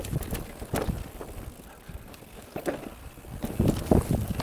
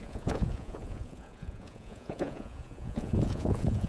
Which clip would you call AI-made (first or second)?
second